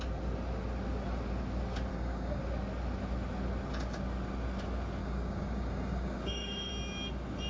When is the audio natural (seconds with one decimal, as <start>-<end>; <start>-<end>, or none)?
0.0-1.9; 2.4-5.0; 6.7-7.5